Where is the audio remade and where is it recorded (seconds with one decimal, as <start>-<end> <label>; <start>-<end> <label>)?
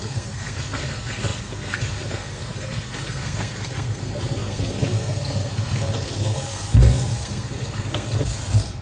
0.0-8.8 remade